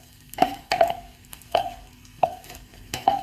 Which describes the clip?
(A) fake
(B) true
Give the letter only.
A